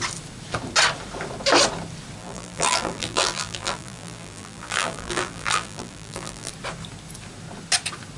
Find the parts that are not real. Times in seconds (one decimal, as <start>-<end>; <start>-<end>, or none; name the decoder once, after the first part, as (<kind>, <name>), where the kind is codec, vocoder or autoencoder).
2.2-6.5 (vocoder, BigVGAN v2)

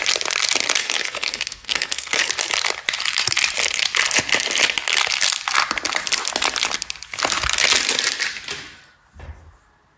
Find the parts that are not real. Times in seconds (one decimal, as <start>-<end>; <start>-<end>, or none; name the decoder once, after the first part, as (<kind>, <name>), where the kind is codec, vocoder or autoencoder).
0.8-2.3 (codec, SNAC)

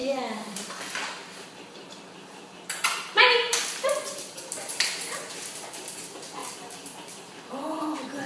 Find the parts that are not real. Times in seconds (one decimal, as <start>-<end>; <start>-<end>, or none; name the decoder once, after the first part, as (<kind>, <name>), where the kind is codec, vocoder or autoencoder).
0.0-2.0 (vocoder, BigVGAN v2); 3.5-4.4; 6.4-7.3

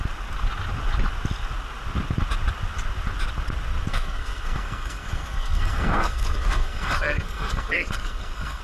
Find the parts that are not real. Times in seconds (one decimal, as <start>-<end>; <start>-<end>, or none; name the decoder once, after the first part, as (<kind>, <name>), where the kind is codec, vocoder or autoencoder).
3.9-8.6 (codec, SNAC)

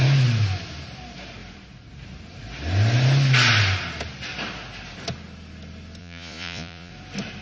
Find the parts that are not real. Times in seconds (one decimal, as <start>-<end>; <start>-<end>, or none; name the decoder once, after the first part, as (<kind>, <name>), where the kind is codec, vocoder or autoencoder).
6.0-6.9 (vocoder, Vocos)

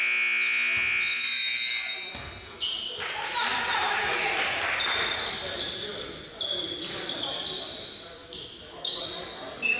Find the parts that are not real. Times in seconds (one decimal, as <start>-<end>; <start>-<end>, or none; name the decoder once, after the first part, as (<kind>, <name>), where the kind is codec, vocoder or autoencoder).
3.5-4.2 (autoencoder, DAC-VAE); 8.2-9.0

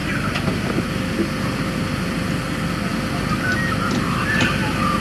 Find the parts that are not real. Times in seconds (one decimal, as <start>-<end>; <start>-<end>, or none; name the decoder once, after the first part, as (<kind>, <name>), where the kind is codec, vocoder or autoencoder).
none